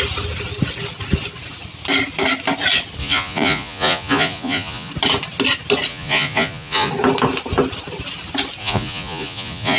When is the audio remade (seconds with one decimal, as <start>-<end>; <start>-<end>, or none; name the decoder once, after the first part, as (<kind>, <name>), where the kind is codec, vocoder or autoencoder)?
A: 3.0-4.9 (vocoder, Vocos); 5.9-6.9; 8.6-9.8